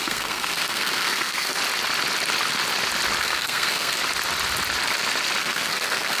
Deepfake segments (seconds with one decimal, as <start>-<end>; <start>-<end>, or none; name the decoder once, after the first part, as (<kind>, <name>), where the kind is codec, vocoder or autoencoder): 0.0-1.6 (codec, SNAC); 3.2-4.0; 5.4-6.2